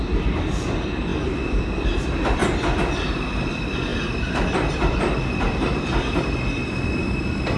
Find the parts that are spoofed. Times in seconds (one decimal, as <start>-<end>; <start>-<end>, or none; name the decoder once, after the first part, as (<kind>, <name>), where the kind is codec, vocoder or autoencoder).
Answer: 3.9-6.2 (vocoder, BigVGAN v2)